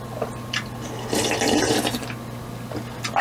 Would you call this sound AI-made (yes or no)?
no